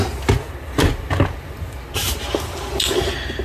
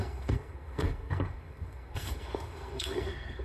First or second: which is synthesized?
second